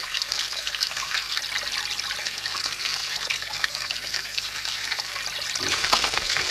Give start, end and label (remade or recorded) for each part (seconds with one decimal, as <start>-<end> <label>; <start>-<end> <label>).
0.0-1.4 remade; 1.4-2.2 recorded; 2.2-5.2 remade; 5.2-5.7 recorded; 5.7-6.5 remade